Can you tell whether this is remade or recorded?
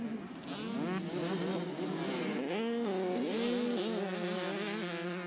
recorded